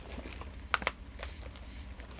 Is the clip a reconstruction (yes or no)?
no